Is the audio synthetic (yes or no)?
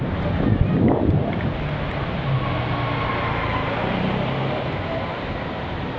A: no